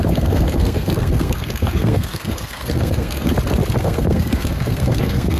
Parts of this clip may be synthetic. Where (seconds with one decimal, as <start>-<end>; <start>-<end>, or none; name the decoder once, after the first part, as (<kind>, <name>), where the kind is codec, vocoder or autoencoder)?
0.0-3.3 (codec, SNAC); 3.8-5.4